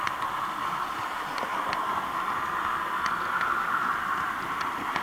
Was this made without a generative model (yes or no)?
yes